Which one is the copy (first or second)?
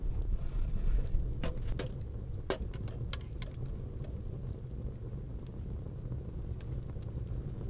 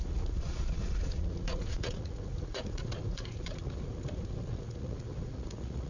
second